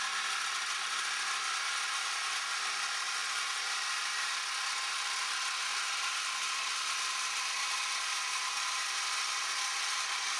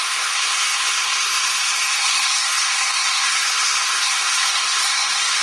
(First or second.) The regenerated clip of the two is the second